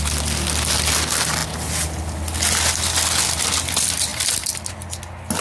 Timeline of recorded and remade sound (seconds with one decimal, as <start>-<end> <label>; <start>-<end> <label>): 0.0-5.4 recorded